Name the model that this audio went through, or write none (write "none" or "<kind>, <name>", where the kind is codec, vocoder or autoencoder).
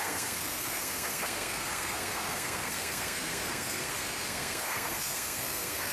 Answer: codec, SNAC